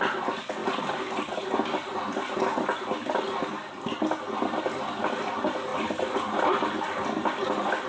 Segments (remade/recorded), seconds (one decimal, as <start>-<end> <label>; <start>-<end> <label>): 0.0-5.7 recorded; 5.7-6.4 remade; 6.4-7.9 recorded